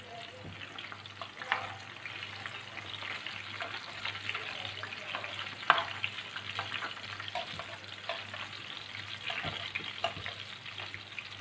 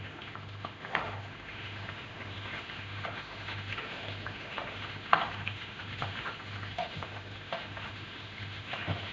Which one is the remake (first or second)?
second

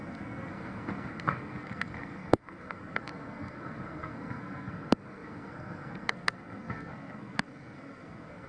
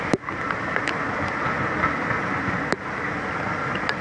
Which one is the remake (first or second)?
first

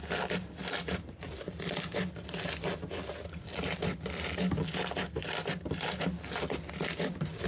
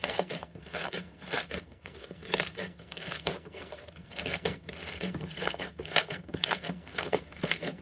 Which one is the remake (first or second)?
second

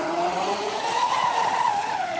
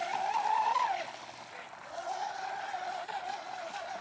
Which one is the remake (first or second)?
first